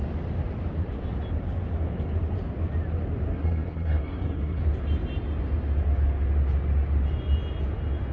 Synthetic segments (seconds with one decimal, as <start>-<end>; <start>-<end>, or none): 3.3-4.6